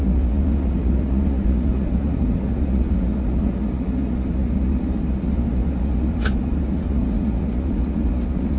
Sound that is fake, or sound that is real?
fake